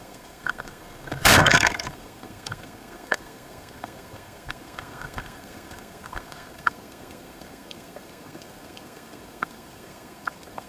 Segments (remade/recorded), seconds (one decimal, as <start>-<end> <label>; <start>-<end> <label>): 0.0-10.7 remade